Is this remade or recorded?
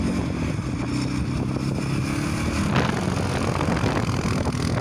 recorded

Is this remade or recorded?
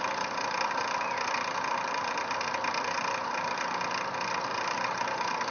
recorded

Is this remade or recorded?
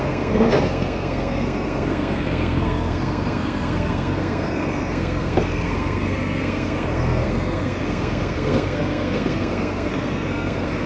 remade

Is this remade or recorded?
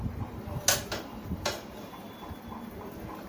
recorded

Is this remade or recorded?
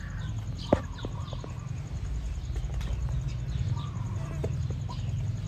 recorded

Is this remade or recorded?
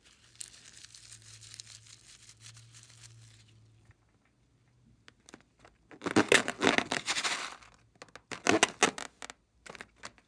recorded